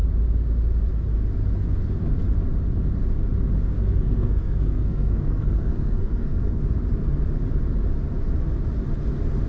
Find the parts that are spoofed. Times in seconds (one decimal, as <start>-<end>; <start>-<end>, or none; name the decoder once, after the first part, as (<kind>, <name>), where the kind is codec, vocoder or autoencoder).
3.8-6.6 (codec, SNAC)